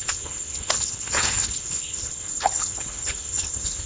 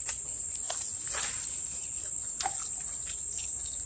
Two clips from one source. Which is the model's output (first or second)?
first